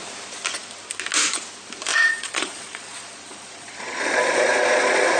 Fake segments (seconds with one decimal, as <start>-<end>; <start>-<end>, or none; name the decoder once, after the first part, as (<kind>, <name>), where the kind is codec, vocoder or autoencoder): 1.9-5.2 (vocoder, Vocos)